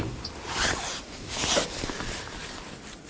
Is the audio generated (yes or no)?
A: no